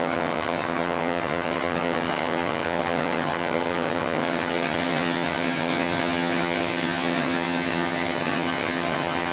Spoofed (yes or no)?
yes